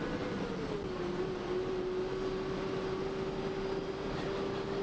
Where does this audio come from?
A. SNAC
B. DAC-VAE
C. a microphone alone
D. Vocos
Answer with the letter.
C